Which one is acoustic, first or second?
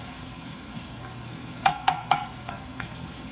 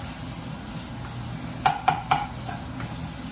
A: second